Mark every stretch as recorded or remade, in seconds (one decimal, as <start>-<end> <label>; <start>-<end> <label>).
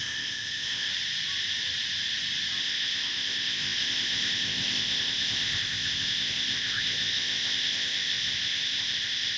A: 0.0-0.9 remade; 0.9-2.6 recorded; 2.6-9.4 remade